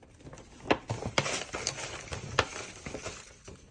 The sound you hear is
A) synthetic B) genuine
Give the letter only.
B